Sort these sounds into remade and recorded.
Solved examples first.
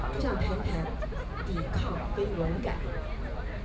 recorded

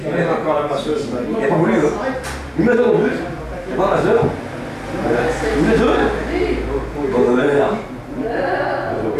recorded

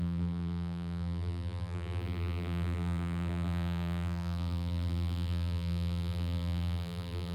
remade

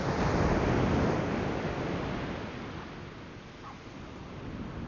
recorded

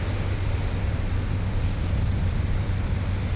recorded